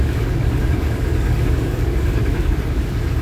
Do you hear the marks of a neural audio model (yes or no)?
yes